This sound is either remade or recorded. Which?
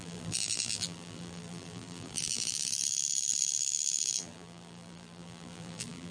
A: remade